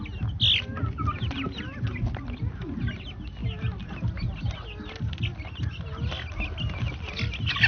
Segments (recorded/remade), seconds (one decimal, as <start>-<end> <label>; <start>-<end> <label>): 0.0-7.7 recorded